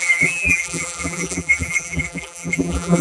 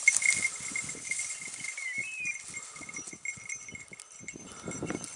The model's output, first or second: first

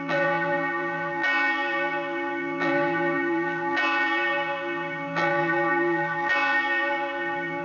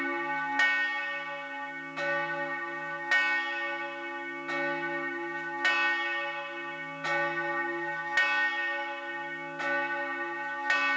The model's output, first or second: first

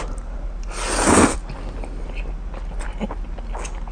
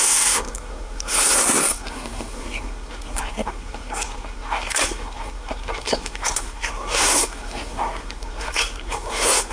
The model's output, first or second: second